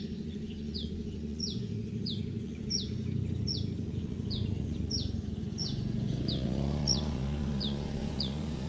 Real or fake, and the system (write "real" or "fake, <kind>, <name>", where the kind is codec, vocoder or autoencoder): fake, vocoder, Vocos